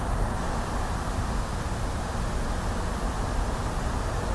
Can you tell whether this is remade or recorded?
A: recorded